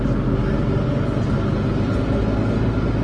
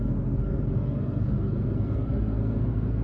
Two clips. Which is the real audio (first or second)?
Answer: first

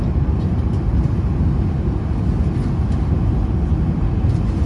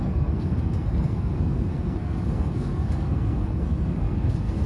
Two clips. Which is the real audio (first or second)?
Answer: first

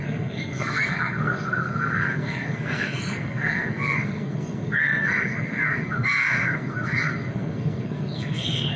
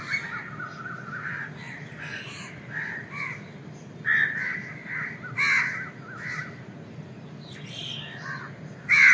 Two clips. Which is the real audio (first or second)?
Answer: second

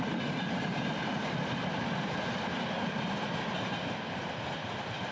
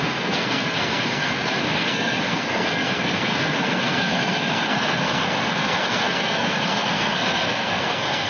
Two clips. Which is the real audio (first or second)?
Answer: first